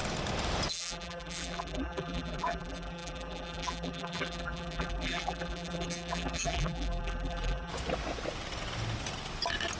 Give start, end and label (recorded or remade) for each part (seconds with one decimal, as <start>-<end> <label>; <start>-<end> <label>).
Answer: 0.0-0.7 recorded; 0.7-7.7 remade; 7.7-9.8 recorded